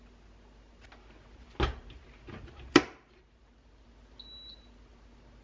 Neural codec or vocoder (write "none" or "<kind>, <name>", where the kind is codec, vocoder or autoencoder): none